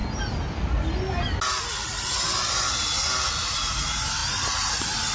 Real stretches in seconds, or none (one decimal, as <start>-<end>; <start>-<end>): 0.0-4.2